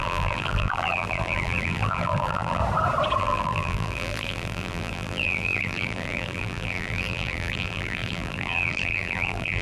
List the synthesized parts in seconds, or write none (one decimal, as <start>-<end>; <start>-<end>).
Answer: 0.0-2.6; 3.2-9.6